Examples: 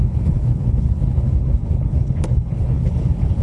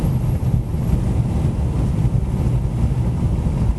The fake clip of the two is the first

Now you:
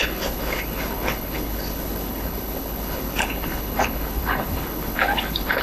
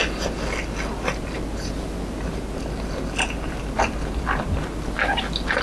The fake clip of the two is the first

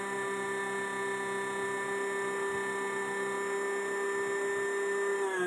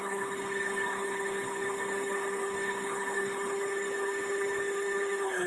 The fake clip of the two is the second